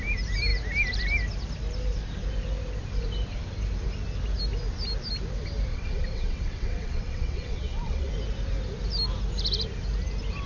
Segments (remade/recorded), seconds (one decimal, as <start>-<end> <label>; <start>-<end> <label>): 0.0-5.7 recorded; 5.7-8.1 remade; 8.1-10.5 recorded